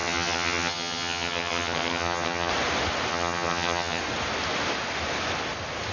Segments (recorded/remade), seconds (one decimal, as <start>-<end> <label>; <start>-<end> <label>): 0.0-2.5 remade; 2.5-3.1 recorded; 3.1-4.0 remade; 4.0-5.9 recorded